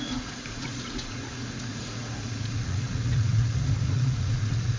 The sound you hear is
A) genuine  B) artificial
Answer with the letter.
B